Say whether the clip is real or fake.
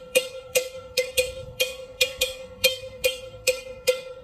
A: fake